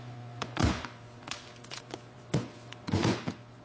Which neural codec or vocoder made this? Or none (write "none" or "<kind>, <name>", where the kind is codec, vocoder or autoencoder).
vocoder, Vocos